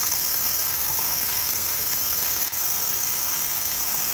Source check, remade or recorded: remade